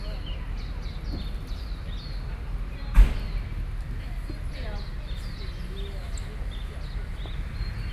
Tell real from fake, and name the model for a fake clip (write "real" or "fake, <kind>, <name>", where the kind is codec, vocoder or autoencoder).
real